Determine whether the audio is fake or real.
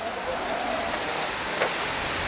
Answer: real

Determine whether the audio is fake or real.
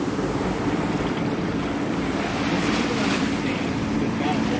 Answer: fake